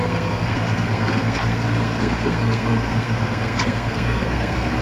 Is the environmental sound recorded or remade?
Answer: remade